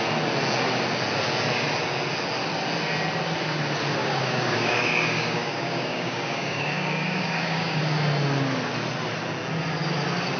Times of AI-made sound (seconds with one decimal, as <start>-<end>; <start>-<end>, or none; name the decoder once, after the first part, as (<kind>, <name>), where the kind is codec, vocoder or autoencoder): 4.0-7.8 (codec, DAC)